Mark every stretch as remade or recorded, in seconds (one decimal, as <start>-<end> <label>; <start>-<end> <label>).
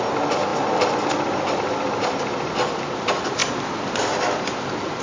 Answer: 0.0-0.5 recorded; 0.5-2.5 remade; 2.5-3.4 recorded; 3.4-4.0 remade; 4.0-5.0 recorded